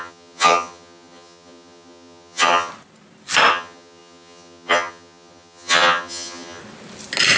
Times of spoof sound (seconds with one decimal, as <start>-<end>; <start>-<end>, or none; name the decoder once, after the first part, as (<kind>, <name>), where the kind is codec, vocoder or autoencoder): 0.0-2.7 (vocoder, HiFi-GAN); 3.5-6.6